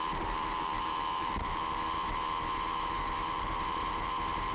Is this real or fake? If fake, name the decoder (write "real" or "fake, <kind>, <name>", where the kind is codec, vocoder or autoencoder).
fake, vocoder, BigVGAN v2